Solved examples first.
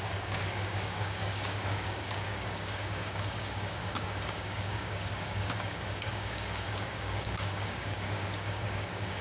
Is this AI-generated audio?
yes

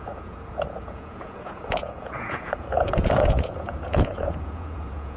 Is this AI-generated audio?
yes